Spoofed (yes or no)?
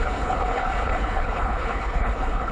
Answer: yes